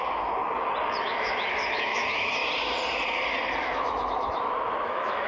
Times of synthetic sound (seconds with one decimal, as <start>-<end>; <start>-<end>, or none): 0.0-0.4; 1.0-2.4; 3.6-5.3